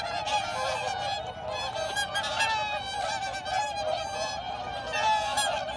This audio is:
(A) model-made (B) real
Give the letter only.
B